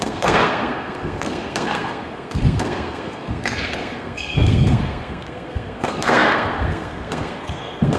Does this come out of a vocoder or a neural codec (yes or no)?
yes